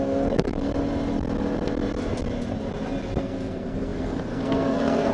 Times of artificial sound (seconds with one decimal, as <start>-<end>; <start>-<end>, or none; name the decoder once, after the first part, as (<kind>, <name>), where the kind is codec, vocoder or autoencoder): 0.0-0.7 (codec, SNAC); 3.2-5.1